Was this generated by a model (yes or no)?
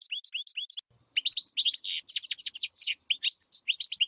no